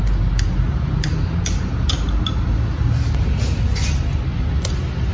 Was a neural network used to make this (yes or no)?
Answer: no